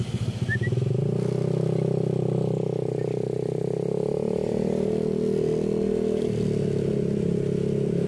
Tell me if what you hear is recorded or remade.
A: recorded